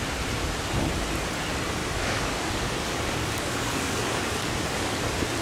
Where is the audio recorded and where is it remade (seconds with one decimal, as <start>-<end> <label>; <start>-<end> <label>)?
0.0-1.8 recorded; 1.8-5.0 remade; 5.0-5.4 recorded